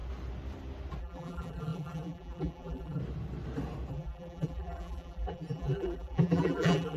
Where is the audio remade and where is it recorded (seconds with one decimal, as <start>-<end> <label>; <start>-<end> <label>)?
0.0-1.0 recorded; 1.0-3.0 remade; 3.0-3.9 recorded; 3.9-7.0 remade